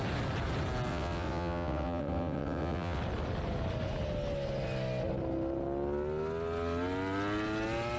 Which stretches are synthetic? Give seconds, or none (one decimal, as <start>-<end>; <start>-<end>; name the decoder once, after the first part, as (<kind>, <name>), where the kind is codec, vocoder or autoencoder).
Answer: 0.9-3.0 (vocoder, WaveNeXt)